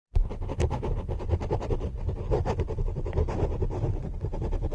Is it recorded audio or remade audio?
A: recorded